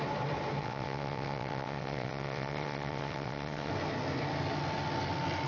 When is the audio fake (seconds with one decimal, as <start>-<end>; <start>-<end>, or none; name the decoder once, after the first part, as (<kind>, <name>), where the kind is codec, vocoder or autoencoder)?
0.6-3.7 (vocoder, WaveNeXt)